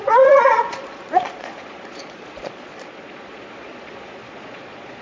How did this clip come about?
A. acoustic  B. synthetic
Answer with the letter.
B